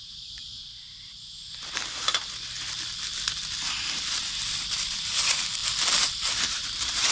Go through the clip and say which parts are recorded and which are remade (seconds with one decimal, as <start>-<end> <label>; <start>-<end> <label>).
0.0-0.4 remade; 0.4-3.7 recorded; 3.7-5.6 remade; 5.6-6.1 recorded; 6.1-7.1 remade